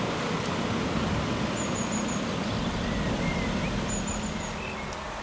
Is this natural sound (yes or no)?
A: yes